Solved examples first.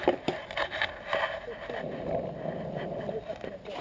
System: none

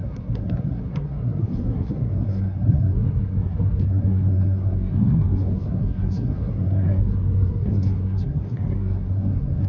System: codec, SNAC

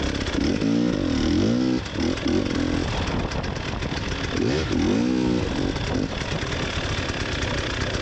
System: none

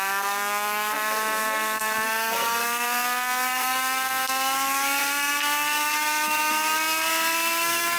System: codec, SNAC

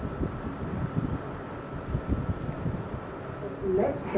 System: none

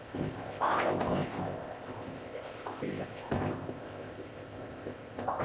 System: codec, ZipCodec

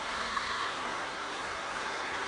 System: codec, SNAC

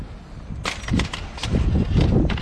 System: none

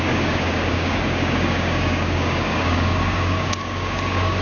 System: codec, DAC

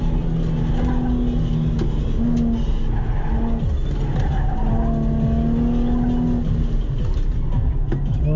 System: none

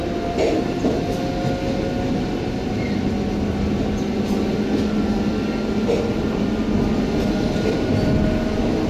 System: none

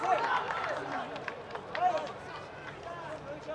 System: none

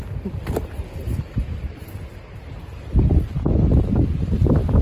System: none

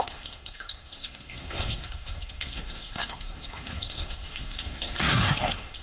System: codec, SNAC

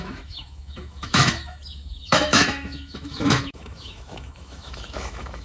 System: autoencoder, DAC-VAE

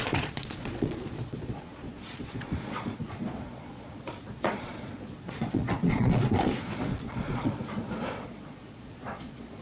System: vocoder, Vocos